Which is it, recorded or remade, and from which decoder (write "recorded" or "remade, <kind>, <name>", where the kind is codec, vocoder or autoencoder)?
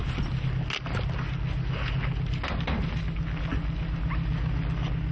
recorded